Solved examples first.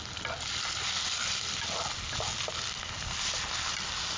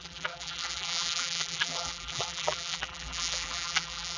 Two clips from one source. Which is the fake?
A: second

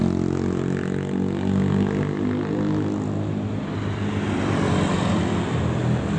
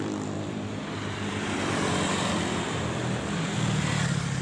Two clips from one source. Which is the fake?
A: second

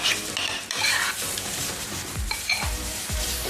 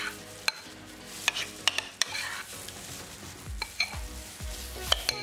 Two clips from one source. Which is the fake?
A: first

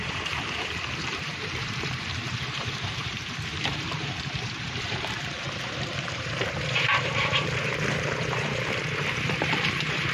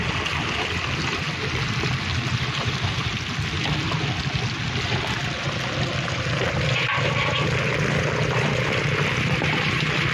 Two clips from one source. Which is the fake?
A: first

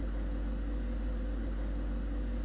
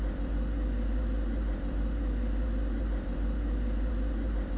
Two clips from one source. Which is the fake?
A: second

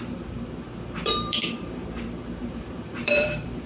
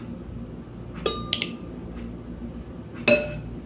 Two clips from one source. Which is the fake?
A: first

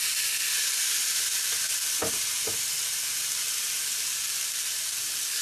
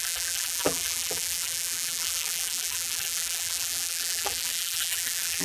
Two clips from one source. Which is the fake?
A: second